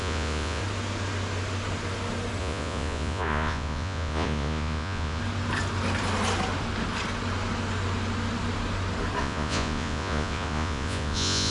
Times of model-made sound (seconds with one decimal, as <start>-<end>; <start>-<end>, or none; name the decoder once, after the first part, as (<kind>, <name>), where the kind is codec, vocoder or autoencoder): 0.0-0.6 (vocoder, Vocos); 2.4-5.2; 9.2-11.5